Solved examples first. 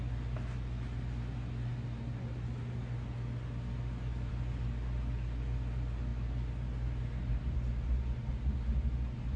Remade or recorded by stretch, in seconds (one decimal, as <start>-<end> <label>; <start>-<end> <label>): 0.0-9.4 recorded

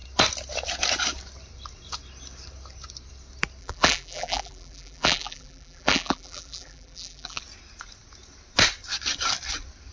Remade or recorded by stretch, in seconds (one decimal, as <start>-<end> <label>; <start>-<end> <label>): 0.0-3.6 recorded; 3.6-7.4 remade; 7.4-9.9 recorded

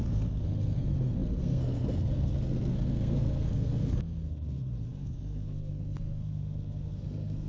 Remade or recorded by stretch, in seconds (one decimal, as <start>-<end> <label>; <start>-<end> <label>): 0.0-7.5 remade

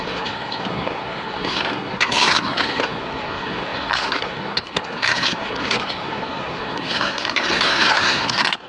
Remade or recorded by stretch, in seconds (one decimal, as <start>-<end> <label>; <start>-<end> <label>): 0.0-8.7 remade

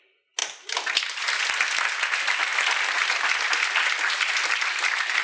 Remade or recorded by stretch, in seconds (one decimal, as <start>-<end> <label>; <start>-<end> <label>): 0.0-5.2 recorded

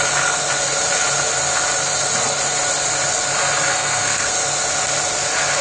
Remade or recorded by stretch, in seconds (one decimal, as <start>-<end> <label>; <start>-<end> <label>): 0.0-3.7 recorded; 3.7-4.3 remade; 4.3-5.6 recorded

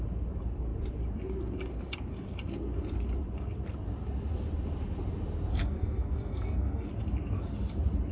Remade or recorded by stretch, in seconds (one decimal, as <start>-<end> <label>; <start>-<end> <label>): 0.0-5.6 recorded; 5.6-6.9 remade; 6.9-8.1 recorded